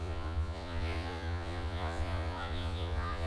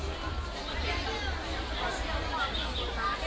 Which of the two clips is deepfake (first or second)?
first